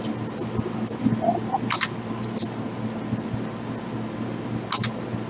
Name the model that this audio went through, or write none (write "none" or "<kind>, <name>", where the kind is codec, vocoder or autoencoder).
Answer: none